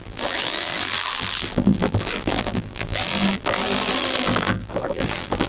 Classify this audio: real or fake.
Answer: fake